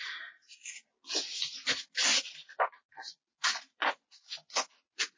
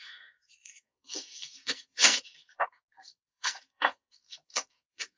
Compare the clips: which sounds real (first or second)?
first